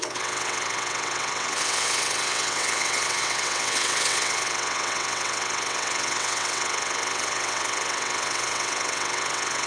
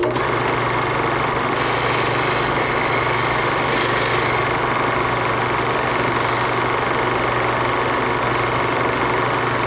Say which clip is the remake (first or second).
first